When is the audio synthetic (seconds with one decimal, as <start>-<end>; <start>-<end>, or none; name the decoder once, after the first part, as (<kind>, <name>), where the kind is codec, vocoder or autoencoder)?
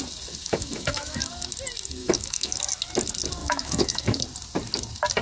0.4-1.3 (autoencoder, DAC-VAE); 2.0-2.6; 3.4-4.2